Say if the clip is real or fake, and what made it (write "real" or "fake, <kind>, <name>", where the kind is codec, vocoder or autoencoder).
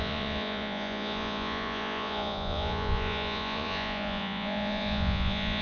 fake, vocoder, Vocos